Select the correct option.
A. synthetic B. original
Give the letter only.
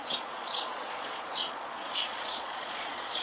A